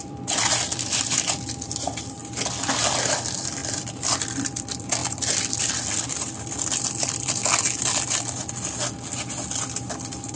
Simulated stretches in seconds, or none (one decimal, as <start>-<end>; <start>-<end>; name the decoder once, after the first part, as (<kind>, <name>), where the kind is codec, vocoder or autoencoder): 0.0-2.2 (vocoder, BigVGAN v2); 3.1-7.4; 10.0-10.4